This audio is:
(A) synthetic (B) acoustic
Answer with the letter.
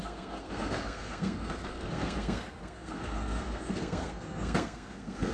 A